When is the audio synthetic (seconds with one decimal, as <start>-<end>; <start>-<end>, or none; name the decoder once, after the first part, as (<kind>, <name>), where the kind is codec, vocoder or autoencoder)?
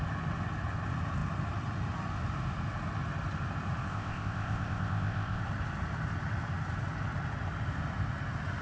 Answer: 3.9-5.4 (codec, ZipCodec)